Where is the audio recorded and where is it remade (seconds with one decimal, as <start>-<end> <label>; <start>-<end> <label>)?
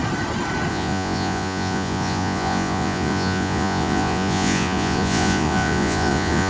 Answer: 0.0-0.7 recorded; 0.7-6.5 remade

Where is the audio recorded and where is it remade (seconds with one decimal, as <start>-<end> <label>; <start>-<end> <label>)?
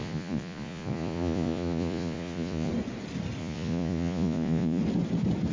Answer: 0.0-2.7 remade; 2.7-3.4 recorded; 3.4-4.8 remade; 4.8-5.5 recorded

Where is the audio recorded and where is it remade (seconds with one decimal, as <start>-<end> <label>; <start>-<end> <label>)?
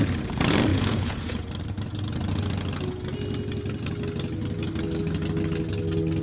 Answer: 0.0-0.7 recorded; 0.7-1.5 remade; 1.5-6.2 recorded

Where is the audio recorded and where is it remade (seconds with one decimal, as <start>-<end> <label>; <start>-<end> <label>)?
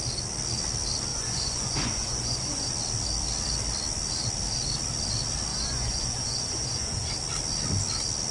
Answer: 0.0-1.1 recorded; 1.1-2.7 remade; 2.7-5.5 recorded; 5.5-7.1 remade; 7.1-8.3 recorded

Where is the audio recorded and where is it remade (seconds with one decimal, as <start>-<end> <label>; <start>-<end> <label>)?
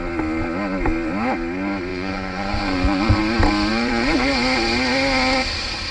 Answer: 0.0-1.9 recorded; 1.9-3.2 remade; 3.2-3.7 recorded; 3.7-4.3 remade; 4.3-5.9 recorded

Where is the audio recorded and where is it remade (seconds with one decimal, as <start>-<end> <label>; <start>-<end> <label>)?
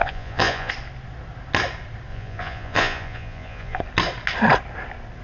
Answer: 0.0-0.7 remade; 0.7-2.1 recorded; 2.1-3.8 remade; 3.8-5.2 recorded